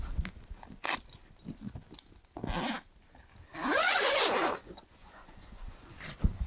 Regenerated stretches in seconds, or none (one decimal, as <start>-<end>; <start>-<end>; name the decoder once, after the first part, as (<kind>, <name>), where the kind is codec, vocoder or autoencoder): 3.6-5.9 (vocoder, Vocos)